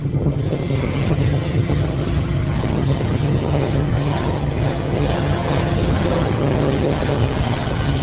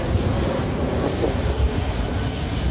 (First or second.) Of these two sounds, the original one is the second